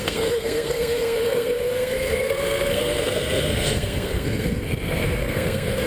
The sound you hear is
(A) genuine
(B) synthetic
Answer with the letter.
B